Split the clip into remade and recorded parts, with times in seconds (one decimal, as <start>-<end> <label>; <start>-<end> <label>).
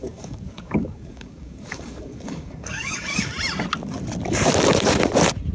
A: 0.0-3.3 remade; 3.3-5.5 recorded